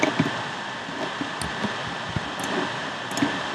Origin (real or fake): real